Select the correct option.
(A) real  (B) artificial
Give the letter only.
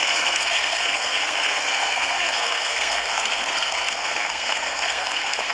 B